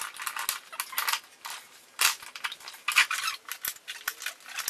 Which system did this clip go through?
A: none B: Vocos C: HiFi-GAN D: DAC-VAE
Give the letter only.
A